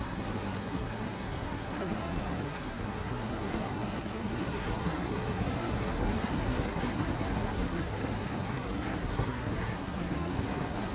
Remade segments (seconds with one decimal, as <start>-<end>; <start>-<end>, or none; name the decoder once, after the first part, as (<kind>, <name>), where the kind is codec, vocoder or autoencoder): 0.0-10.9 (codec, SNAC)

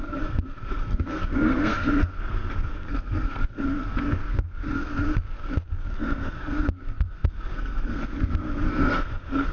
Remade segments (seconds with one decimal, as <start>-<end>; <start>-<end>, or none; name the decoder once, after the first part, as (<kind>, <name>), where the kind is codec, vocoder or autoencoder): 0.0-9.5 (codec, SNAC)

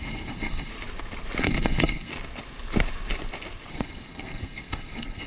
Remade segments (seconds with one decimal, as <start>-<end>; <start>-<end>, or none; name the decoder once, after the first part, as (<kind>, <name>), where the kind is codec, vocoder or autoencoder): 0.0-0.7 (codec, SNAC); 1.4-2.1; 3.7-5.3

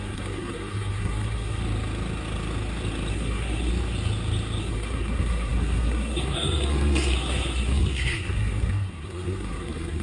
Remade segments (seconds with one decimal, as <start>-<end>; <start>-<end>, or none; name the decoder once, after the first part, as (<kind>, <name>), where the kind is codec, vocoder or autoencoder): 0.0-1.6 (codec, SNAC); 3.1-3.7; 4.6-10.0